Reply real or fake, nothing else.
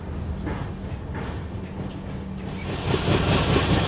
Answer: real